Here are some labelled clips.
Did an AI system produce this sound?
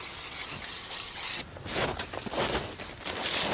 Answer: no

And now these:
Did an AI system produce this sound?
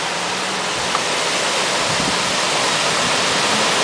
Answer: no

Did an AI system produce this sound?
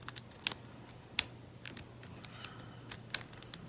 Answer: no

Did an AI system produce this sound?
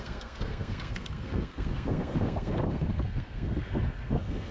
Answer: yes